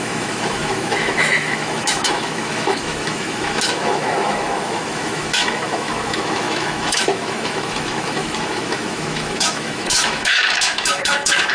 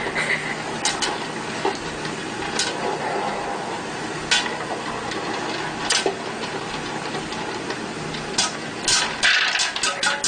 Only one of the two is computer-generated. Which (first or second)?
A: first